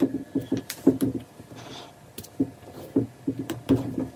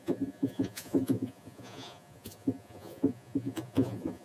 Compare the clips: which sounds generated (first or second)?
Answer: second